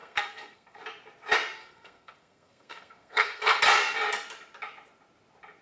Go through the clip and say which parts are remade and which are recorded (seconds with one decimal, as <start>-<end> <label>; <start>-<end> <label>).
0.0-0.8 remade; 0.8-1.6 recorded; 1.6-3.6 remade; 3.6-5.6 recorded